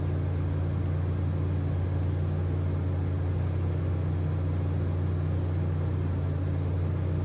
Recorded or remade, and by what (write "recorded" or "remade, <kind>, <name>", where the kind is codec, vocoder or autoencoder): recorded